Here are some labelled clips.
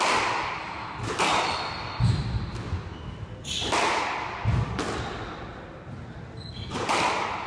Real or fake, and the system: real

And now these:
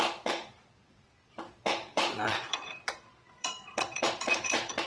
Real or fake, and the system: fake, vocoder, Vocos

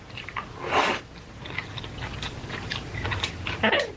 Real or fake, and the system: real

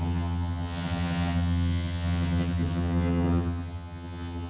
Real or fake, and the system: fake, vocoder, HiFi-GAN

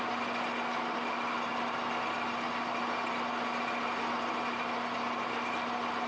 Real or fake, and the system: real